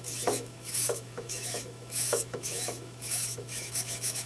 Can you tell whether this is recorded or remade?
remade